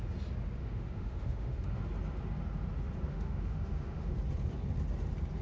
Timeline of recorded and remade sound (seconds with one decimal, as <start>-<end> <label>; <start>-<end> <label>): 0.0-0.6 recorded; 0.6-1.8 remade; 1.8-3.1 recorded; 3.1-4.1 remade; 4.1-5.4 recorded